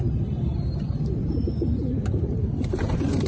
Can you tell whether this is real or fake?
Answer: fake